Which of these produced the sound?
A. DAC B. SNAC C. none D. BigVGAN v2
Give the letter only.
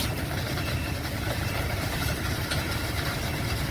D